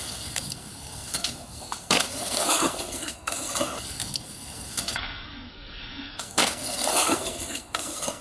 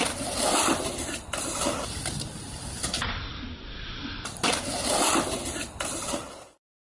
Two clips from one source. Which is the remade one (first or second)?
first